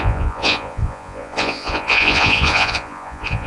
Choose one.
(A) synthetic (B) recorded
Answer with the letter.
A